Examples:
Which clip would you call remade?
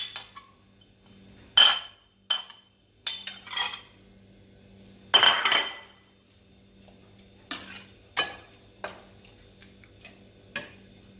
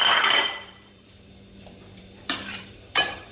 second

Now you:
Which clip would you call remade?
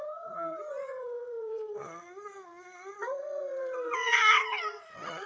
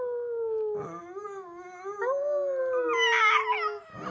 first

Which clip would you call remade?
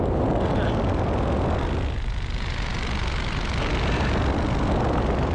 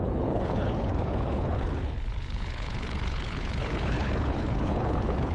second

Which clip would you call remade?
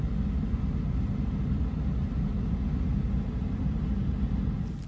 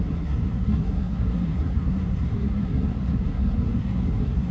second